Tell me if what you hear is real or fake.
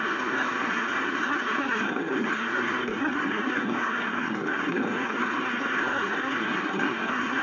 fake